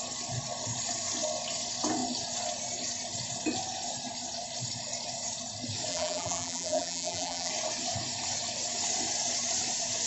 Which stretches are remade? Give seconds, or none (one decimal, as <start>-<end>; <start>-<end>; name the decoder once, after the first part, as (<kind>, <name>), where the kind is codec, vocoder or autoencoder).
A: 5.9-7.5 (vocoder, BigVGAN v2)